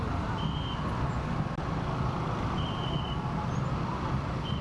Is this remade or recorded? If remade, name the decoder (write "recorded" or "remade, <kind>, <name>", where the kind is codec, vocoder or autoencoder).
recorded